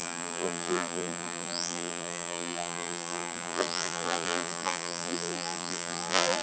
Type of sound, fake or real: fake